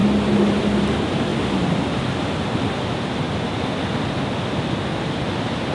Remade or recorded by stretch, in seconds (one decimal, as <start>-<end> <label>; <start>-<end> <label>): 0.0-5.7 recorded